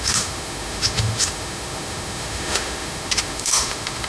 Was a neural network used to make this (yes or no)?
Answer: yes